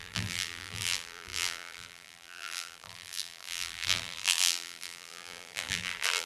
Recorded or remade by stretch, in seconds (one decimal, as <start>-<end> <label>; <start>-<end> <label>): 0.0-6.3 remade